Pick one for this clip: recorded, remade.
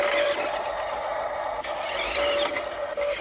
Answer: recorded